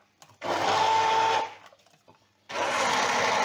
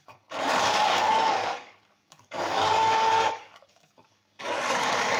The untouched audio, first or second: first